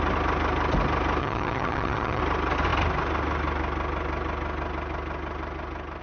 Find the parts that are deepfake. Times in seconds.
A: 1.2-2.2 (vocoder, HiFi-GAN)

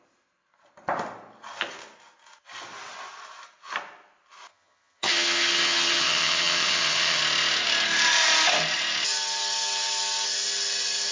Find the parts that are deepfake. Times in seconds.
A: 4.5-7.2 (vocoder, HiFi-GAN)

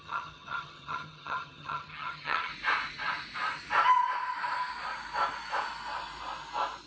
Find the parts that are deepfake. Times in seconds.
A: 0.0-2.5 (vocoder, HiFi-GAN)